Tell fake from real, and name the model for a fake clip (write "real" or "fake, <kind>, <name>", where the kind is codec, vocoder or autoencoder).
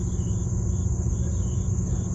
real